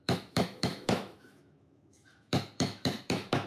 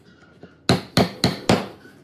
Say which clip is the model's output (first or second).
first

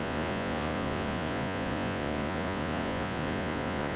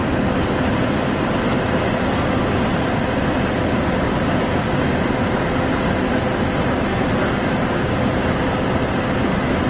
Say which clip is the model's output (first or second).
first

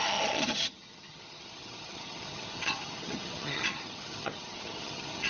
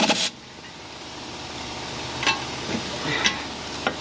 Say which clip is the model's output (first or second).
first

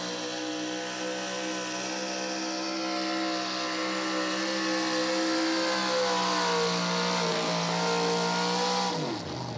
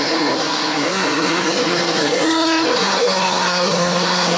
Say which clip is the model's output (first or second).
second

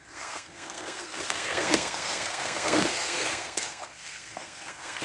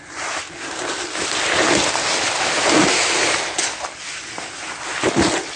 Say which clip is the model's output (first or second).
first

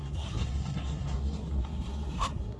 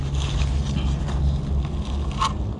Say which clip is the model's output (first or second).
first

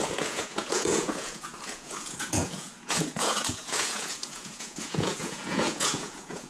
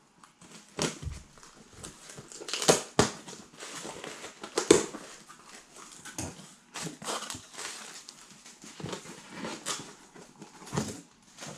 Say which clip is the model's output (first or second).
first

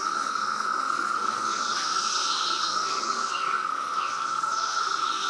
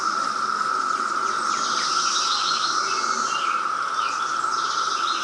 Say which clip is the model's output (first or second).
first